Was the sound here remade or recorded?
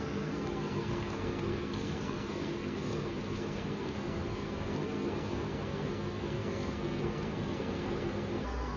remade